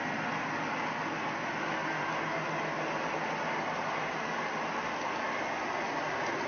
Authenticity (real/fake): real